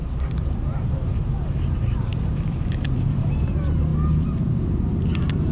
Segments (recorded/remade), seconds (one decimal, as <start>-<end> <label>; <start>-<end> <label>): 0.0-5.5 remade